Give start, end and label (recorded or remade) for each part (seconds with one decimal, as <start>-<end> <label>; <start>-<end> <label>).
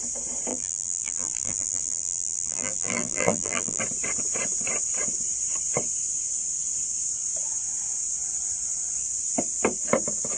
0.0-0.5 recorded; 0.5-3.8 remade; 3.8-10.4 recorded